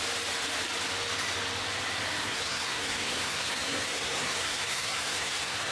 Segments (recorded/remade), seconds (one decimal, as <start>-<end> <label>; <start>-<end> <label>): 0.0-2.2 recorded; 2.2-5.7 remade